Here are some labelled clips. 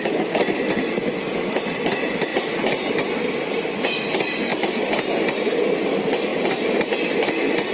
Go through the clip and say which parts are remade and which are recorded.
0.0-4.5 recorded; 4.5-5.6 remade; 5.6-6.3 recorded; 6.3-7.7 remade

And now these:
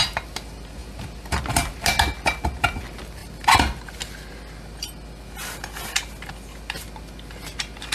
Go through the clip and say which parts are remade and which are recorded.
0.0-7.9 recorded

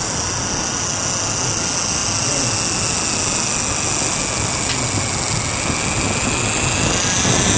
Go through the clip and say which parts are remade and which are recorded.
0.0-7.6 recorded

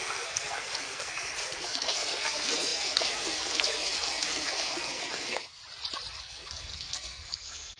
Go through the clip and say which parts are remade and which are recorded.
0.0-5.6 remade; 5.6-6.2 recorded; 6.2-7.8 remade